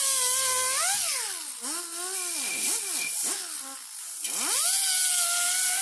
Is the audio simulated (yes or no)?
no